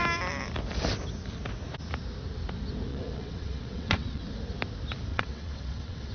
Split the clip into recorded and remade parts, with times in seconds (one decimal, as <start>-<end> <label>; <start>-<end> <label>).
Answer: 0.0-2.9 recorded; 2.9-4.2 remade; 4.2-5.1 recorded; 5.1-6.1 remade